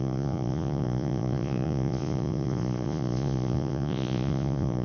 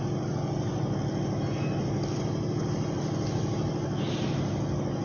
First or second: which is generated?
first